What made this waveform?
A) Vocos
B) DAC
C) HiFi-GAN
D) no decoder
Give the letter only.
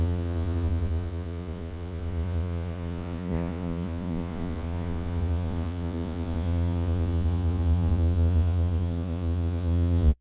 A